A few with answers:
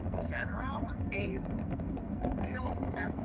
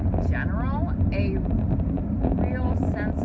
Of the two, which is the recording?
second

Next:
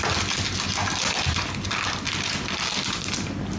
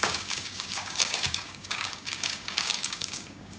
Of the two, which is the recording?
first